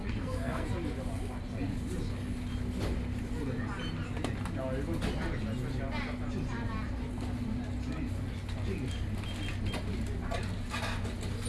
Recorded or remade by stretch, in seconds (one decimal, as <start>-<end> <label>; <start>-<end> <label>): 0.0-0.7 remade; 0.7-11.5 recorded